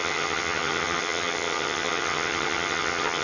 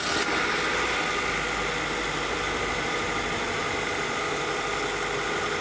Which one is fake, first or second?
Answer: first